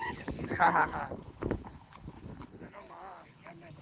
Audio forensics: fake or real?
fake